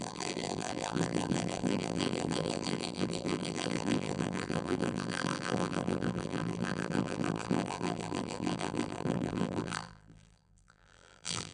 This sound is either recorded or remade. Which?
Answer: remade